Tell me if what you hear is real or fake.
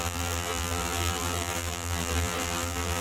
fake